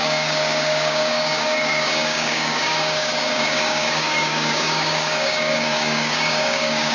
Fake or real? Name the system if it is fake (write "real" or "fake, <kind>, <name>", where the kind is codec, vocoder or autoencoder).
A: fake, codec, DAC